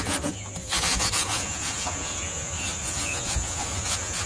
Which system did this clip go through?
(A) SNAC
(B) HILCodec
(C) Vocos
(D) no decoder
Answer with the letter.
C